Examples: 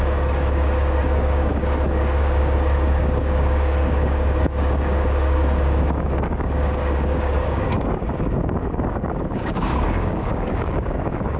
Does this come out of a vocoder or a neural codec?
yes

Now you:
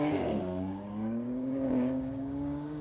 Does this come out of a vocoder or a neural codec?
yes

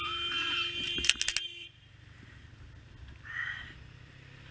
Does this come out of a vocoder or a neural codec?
no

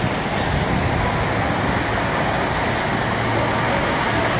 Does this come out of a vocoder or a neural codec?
no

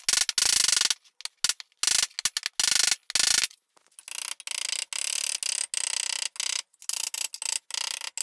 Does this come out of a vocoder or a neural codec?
no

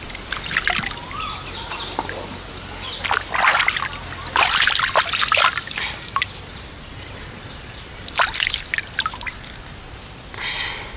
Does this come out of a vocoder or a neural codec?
no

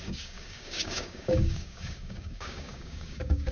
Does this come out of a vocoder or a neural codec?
yes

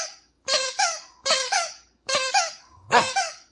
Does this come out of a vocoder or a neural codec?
yes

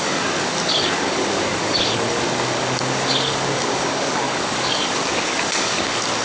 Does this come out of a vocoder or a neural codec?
yes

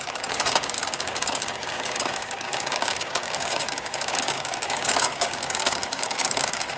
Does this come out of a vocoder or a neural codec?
yes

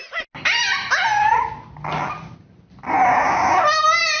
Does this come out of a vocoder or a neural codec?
no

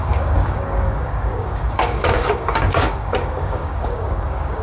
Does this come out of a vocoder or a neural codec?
yes